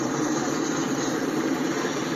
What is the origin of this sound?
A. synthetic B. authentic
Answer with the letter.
A